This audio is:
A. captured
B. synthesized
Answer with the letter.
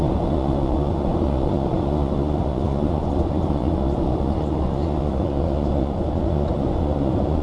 B